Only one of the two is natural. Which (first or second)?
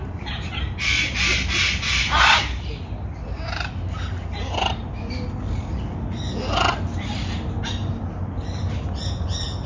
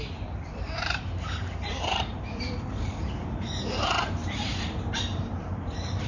first